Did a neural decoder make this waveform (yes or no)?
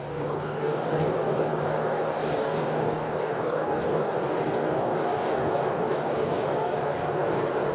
yes